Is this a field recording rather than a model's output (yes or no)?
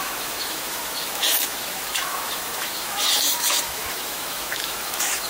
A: no